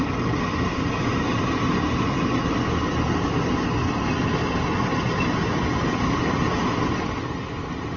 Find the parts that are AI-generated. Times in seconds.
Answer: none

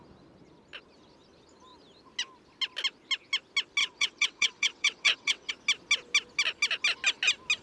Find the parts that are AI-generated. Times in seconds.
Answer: 3.8-5.5 (vocoder, WaveNeXt)

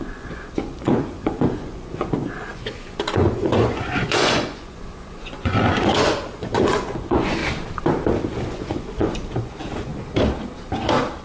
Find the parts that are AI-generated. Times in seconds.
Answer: 0.0-7.4 (vocoder, Vocos); 8.5-9.9